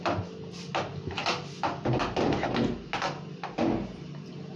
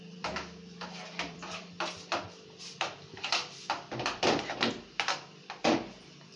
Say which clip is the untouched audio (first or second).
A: first